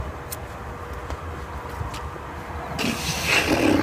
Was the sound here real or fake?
real